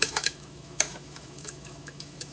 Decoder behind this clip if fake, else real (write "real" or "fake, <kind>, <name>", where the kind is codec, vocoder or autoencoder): fake, autoencoder, DAC-VAE